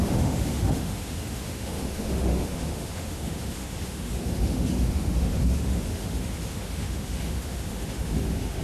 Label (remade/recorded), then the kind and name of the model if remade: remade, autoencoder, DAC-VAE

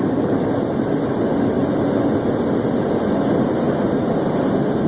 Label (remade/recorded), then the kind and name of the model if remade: recorded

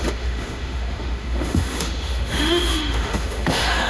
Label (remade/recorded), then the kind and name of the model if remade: remade, autoencoder, DAC-VAE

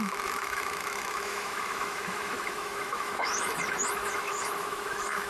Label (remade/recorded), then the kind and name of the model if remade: remade, autoencoder, DAC-VAE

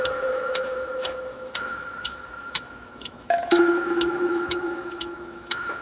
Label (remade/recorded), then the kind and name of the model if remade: remade, autoencoder, DAC-VAE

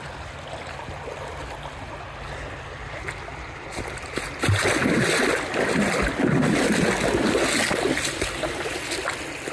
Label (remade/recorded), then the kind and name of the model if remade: recorded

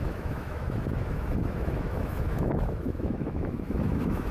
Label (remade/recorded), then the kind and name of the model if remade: remade, autoencoder, DAC-VAE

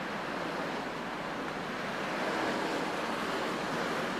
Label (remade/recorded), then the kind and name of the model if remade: recorded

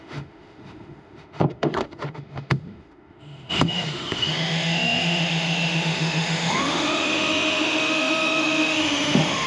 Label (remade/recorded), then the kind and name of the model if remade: remade, autoencoder, DAC-VAE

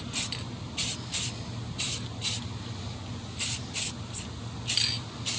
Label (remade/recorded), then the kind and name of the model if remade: recorded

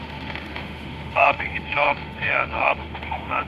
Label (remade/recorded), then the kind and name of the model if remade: remade, autoencoder, DAC-VAE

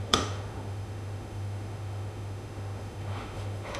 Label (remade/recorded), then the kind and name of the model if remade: remade, autoencoder, DAC-VAE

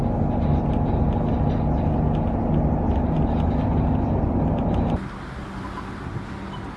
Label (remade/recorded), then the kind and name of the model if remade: recorded